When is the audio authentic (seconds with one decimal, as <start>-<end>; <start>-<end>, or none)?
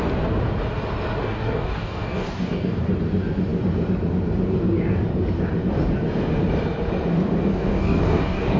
0.0-1.2; 2.9-7.5